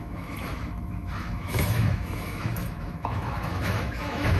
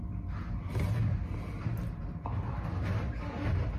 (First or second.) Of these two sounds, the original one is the second